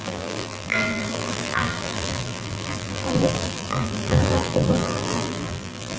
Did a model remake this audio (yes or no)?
yes